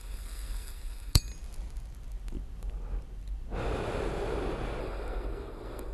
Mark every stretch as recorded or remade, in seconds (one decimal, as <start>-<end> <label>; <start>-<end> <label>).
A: 0.0-1.3 remade; 1.3-4.8 recorded; 4.8-5.9 remade